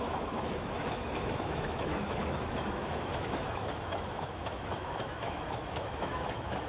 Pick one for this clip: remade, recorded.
remade